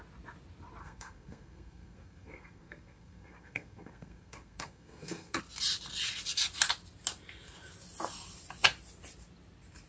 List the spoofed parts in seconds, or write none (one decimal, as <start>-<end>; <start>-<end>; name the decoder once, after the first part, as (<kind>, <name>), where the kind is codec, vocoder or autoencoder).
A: 0.8-5.4 (codec, SNAC)